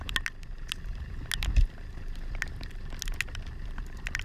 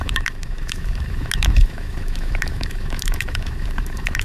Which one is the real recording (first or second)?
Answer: first